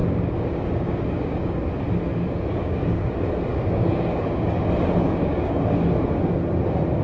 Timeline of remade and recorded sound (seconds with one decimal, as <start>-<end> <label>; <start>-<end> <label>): 0.0-1.7 remade; 1.7-2.1 recorded; 2.1-3.1 remade; 3.1-3.5 recorded; 3.5-4.6 remade; 4.6-5.0 recorded; 5.0-5.8 remade; 5.8-7.0 recorded